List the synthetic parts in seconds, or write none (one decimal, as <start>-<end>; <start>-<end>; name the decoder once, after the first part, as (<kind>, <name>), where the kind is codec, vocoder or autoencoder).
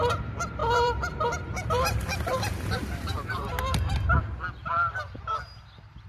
0.6-3.5 (vocoder, BigVGAN v2)